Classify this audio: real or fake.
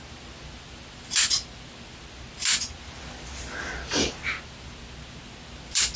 real